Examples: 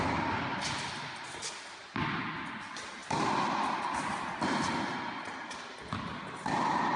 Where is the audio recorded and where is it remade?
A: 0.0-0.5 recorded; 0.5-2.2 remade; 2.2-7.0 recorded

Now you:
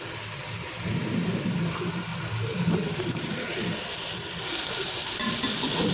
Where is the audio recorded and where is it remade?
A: 0.0-2.1 recorded; 2.1-5.9 remade

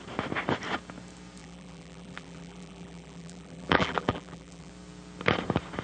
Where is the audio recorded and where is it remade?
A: 0.0-1.4 recorded; 1.4-4.7 remade; 4.7-5.8 recorded

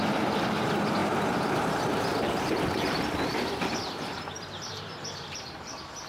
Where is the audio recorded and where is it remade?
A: 0.0-6.1 remade

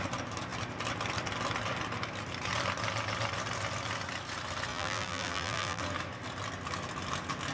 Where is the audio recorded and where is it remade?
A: 0.0-4.7 recorded; 4.7-5.8 remade; 5.8-7.5 recorded

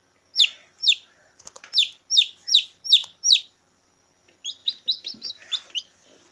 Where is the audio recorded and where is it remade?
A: 0.0-4.6 recorded; 4.6-5.3 remade; 5.3-6.3 recorded

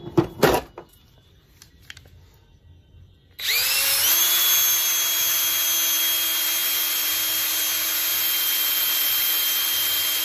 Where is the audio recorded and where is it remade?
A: 0.0-6.6 recorded; 6.6-7.1 remade; 7.1-8.1 recorded; 8.1-10.2 remade